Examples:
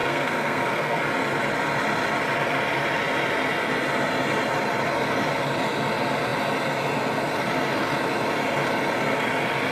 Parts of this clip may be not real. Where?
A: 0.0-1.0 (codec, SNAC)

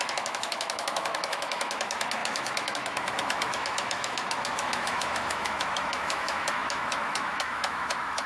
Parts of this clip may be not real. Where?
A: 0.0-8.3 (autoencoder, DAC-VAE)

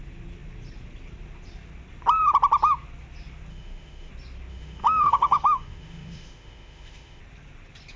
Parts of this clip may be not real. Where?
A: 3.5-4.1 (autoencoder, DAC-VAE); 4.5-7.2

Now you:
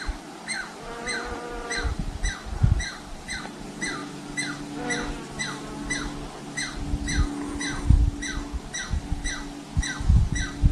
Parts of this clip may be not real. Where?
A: none

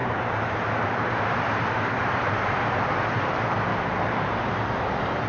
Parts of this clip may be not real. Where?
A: 0.0-3.2 (vocoder, BigVGAN v2); 3.7-5.3